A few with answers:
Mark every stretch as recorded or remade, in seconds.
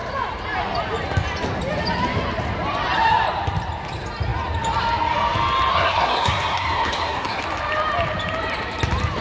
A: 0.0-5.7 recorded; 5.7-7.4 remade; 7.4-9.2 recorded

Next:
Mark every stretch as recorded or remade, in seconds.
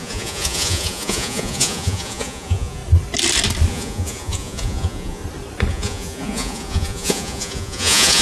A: 0.0-2.8 remade; 2.8-3.7 recorded; 3.7-5.2 remade; 5.2-5.7 recorded; 5.7-8.2 remade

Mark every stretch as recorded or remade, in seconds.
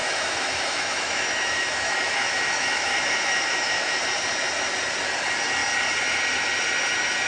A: 0.0-4.0 remade; 4.0-7.3 recorded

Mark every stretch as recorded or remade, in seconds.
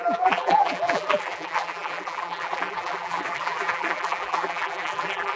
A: 0.0-5.4 remade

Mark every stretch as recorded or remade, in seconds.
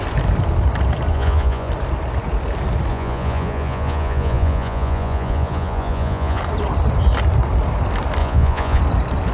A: 0.0-1.1 recorded; 1.1-1.7 remade; 1.7-2.9 recorded; 2.9-6.4 remade; 6.4-8.2 recorded; 8.2-8.8 remade; 8.8-9.3 recorded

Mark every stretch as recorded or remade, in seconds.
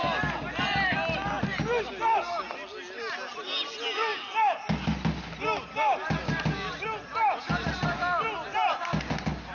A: 0.0-9.5 recorded